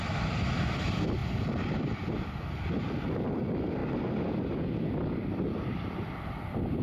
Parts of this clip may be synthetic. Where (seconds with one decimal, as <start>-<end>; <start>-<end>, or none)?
0.0-3.8; 5.3-6.8